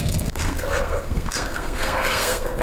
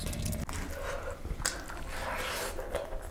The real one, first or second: second